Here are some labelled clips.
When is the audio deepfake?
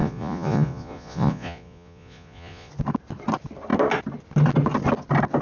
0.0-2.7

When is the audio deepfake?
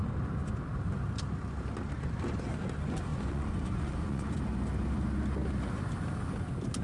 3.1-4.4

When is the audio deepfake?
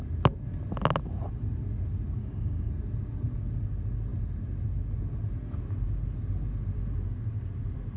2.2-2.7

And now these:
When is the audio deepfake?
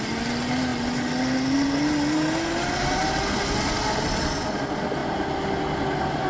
none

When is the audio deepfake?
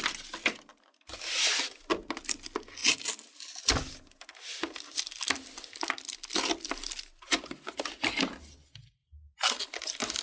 none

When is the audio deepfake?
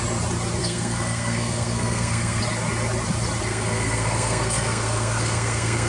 0.6-2.4; 3.5-5.9